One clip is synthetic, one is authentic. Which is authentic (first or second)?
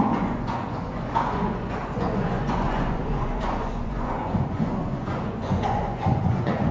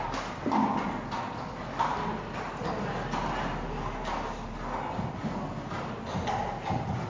second